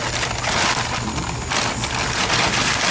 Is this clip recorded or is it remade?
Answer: recorded